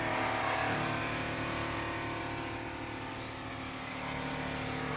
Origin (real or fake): real